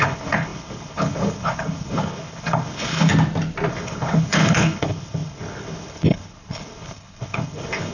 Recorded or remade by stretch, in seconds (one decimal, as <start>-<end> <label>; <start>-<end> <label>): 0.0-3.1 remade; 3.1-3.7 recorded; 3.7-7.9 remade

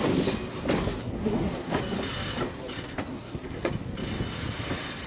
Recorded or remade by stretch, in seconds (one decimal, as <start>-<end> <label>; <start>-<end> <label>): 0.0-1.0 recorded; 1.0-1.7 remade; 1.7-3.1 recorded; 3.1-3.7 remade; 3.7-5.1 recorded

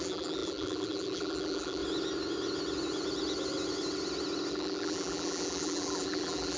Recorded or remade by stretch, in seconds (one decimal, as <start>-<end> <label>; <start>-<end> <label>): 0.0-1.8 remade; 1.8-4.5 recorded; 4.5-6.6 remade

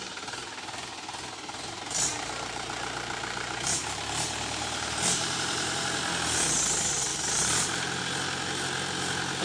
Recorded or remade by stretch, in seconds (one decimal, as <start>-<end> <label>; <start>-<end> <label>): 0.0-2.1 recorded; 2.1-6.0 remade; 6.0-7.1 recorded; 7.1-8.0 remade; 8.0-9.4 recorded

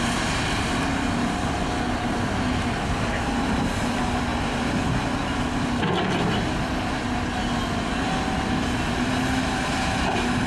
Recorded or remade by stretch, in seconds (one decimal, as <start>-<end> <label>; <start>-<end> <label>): 0.0-10.5 recorded

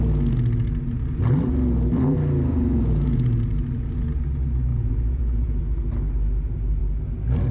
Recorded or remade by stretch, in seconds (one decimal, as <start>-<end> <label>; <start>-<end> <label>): 0.0-2.5 recorded; 2.5-3.4 remade; 3.4-4.7 recorded; 4.7-5.6 remade; 5.6-7.5 recorded